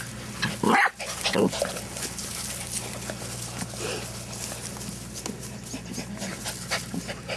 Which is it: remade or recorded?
recorded